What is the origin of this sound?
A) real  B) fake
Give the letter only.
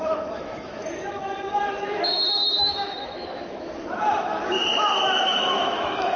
B